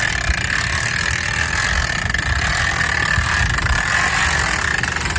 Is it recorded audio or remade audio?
recorded